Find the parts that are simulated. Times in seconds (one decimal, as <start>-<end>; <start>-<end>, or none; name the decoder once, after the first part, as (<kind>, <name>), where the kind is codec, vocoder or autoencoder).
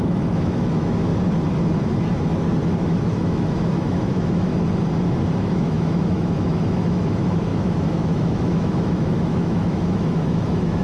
0.0-1.1 (autoencoder, DAC-VAE); 2.6-4.5; 5.3-10.8